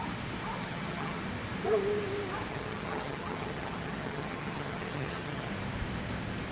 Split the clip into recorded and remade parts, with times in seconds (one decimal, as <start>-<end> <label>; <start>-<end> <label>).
0.0-0.6 recorded; 0.6-1.2 remade; 1.2-2.5 recorded; 2.5-5.5 remade; 5.5-6.5 recorded